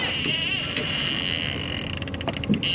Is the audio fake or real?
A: real